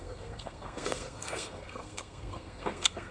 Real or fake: fake